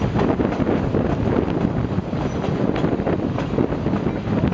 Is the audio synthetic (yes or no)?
no